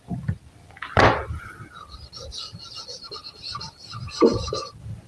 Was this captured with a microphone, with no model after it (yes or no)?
no